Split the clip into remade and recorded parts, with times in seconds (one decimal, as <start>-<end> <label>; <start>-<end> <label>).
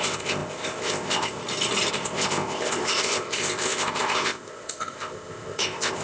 0.0-1.4 remade; 1.4-1.9 recorded; 1.9-6.0 remade